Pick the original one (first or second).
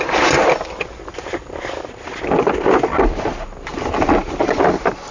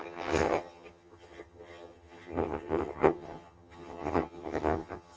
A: first